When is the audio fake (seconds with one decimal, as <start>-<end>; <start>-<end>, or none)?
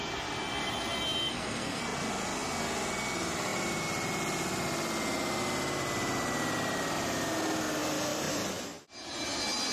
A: 1.3-1.8